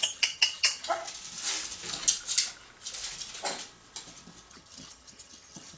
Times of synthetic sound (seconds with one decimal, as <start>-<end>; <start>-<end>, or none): 0.0-1.0; 4.5-5.8